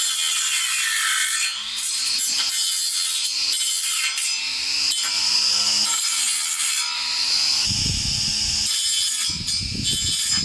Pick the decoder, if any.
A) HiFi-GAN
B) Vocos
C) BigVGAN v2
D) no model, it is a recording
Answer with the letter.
D